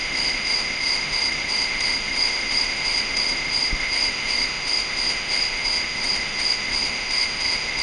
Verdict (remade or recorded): remade